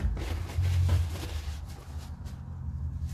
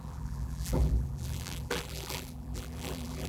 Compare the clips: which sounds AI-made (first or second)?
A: second